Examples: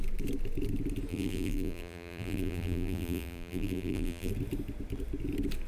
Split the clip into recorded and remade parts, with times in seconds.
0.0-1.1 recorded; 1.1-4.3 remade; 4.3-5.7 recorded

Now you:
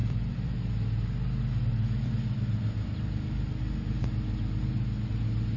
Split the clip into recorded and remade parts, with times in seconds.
0.0-0.6 remade; 0.6-5.6 recorded